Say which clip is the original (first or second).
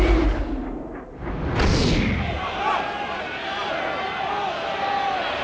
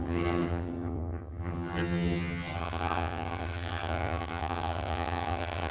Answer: first